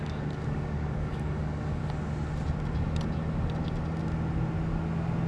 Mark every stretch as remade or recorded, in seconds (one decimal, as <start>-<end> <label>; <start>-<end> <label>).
0.0-1.8 remade; 1.8-5.3 recorded